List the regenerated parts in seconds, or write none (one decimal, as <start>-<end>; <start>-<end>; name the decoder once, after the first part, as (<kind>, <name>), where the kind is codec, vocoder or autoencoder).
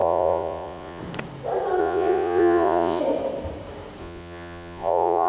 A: 0.0-1.0 (vocoder, Vocos); 1.8-3.0; 4.0-5.3